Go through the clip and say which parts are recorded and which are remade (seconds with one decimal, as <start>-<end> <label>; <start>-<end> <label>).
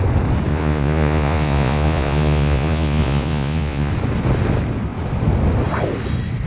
0.0-0.5 recorded; 0.5-3.9 remade; 3.9-6.5 recorded